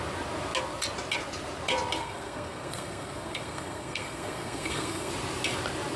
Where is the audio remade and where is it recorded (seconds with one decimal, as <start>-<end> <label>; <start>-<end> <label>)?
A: 0.0-2.0 recorded; 2.0-5.1 remade; 5.1-6.0 recorded